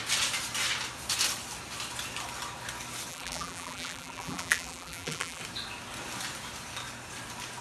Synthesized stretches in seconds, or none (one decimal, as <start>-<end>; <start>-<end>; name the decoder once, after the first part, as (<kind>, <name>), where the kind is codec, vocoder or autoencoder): 3.1-5.4 (vocoder, BigVGAN v2)